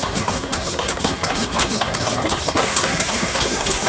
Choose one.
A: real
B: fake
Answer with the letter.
B